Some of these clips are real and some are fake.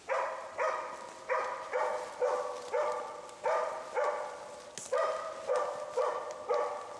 real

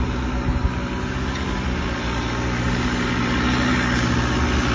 real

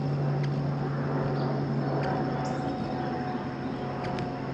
real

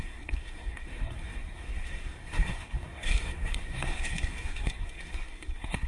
fake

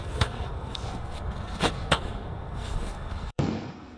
fake